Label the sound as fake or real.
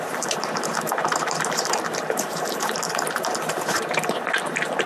fake